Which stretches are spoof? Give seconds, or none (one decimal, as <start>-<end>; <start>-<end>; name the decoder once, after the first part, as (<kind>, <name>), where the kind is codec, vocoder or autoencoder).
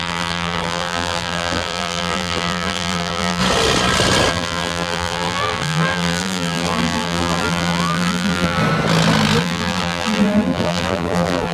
0.0-3.4 (vocoder, BigVGAN v2); 4.3-8.6; 9.4-11.5